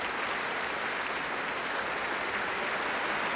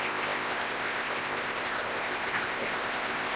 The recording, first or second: first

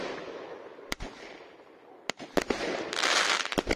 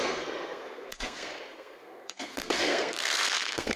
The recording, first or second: first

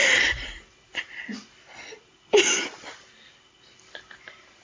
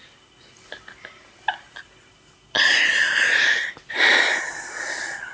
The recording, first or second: second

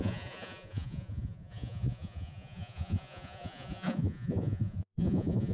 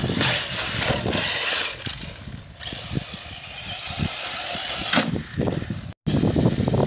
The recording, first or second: second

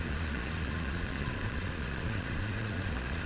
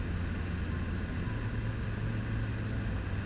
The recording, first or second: second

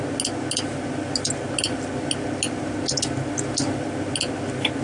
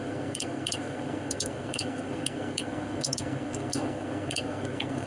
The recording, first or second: first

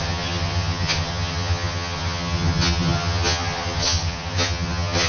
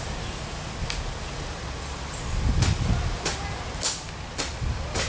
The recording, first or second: second